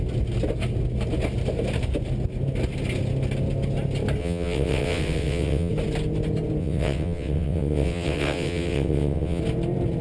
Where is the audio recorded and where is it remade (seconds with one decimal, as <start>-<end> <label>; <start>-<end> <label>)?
0.0-4.2 recorded; 4.2-5.7 remade; 5.7-6.6 recorded; 6.6-9.4 remade; 9.4-10.0 recorded